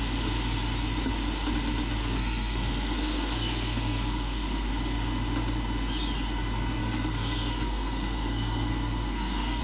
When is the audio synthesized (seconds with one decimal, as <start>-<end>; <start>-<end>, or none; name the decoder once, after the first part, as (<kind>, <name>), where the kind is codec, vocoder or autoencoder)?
2.0-4.7 (codec, SNAC); 6.8-9.6